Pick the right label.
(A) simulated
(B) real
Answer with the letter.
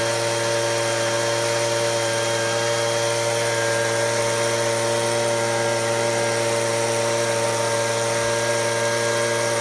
B